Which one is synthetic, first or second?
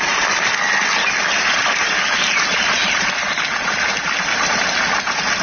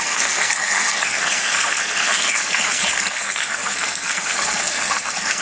second